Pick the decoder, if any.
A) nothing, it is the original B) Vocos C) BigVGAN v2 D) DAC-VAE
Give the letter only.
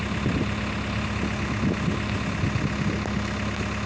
A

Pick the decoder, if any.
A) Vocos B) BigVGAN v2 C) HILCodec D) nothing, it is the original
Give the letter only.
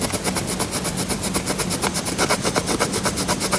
D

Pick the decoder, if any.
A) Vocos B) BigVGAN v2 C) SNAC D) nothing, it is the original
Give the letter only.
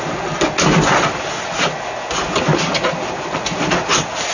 D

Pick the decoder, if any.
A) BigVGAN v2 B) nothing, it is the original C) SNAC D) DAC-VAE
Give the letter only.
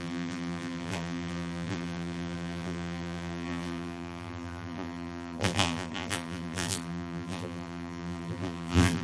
A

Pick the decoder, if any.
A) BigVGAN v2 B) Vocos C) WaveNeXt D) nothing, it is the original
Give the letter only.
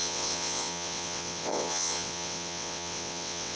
C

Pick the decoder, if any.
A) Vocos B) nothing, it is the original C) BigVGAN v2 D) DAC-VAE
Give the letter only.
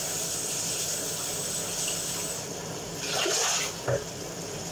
B